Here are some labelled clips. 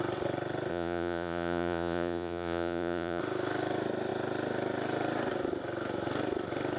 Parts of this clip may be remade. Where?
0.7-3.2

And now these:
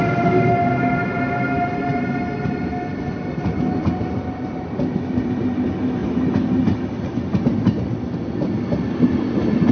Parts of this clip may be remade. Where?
none